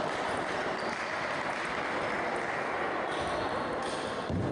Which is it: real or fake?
real